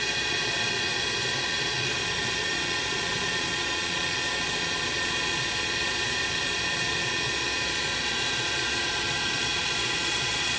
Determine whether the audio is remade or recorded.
remade